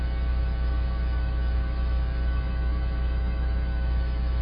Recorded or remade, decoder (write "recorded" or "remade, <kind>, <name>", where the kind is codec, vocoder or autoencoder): remade, autoencoder, DAC-VAE